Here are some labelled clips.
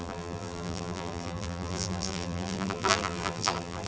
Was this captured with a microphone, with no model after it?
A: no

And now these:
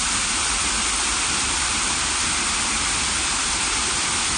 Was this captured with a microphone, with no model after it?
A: yes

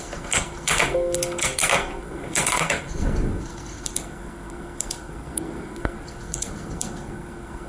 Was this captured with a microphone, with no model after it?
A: no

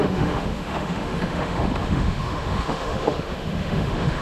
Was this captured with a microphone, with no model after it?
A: no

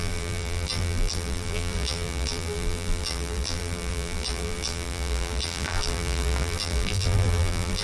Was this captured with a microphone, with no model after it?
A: no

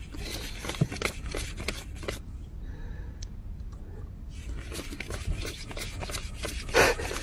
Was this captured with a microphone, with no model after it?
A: yes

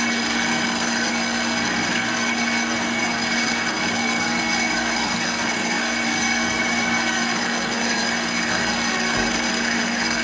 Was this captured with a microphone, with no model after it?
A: no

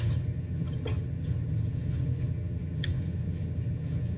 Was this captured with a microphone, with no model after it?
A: no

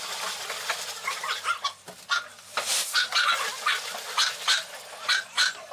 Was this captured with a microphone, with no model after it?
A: yes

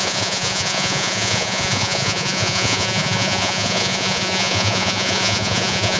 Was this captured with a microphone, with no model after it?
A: no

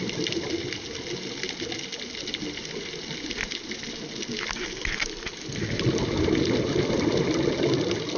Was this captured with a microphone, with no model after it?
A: yes